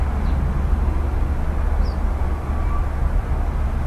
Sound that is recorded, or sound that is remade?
recorded